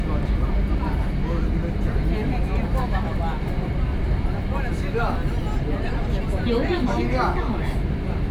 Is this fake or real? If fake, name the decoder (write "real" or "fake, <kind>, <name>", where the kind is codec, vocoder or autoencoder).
real